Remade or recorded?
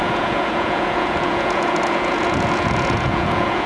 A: remade